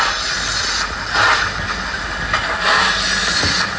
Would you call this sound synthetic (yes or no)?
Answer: no